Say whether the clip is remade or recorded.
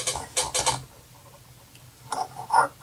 recorded